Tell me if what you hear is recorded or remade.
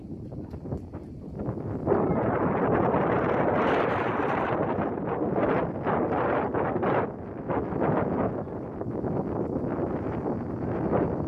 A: recorded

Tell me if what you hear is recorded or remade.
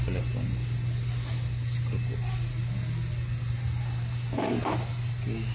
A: recorded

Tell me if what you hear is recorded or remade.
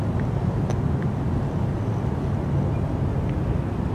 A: recorded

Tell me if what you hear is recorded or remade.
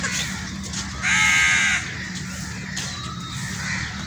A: recorded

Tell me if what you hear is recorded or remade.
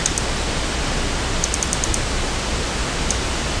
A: recorded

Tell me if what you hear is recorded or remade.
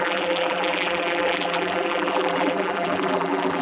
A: remade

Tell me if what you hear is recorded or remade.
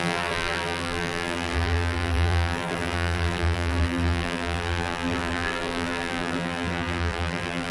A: remade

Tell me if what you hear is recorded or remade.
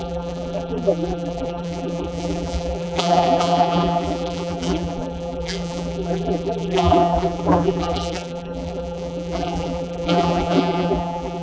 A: remade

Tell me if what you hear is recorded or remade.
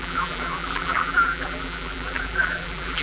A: remade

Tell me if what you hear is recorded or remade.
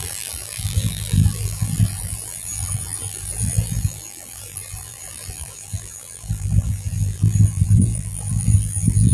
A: remade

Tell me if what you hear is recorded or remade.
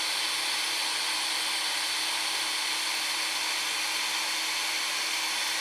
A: recorded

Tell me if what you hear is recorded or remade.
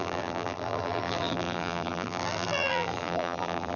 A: remade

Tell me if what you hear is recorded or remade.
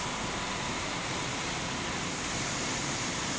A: remade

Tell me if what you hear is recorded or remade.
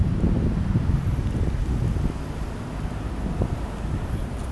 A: recorded